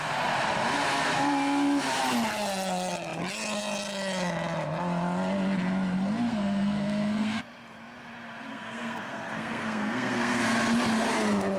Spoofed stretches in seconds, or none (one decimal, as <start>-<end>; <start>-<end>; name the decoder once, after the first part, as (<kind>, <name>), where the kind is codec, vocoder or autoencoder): 6.3-7.4 (codec, SNAC); 8.5-10.4